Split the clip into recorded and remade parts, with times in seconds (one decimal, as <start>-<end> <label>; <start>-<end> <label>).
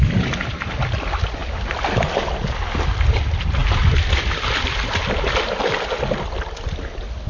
0.0-7.3 recorded